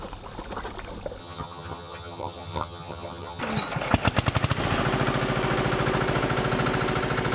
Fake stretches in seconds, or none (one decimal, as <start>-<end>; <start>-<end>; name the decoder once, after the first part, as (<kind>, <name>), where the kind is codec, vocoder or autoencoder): 1.2-3.4 (vocoder, HiFi-GAN)